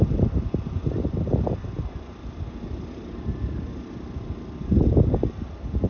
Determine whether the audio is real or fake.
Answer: real